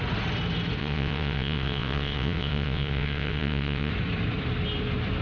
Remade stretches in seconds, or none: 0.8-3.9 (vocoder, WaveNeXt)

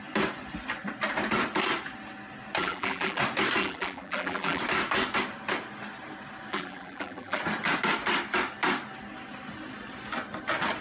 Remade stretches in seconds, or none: 2.6-3.2 (vocoder, BigVGAN v2); 3.6-4.6; 6.5-7.4

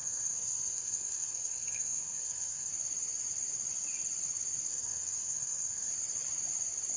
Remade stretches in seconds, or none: 0.0-2.7 (codec, SNAC); 4.7-5.9

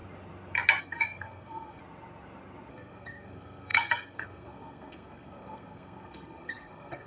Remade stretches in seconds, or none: 0.8-1.8 (codec, SNAC); 2.7-7.1

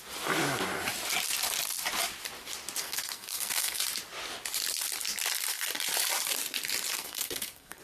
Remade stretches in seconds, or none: 2.8-3.8 (codec, SNAC); 6.9-7.8

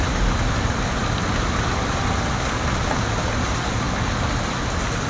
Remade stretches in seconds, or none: none